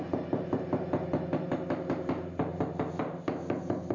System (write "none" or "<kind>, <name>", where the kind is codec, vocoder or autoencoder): none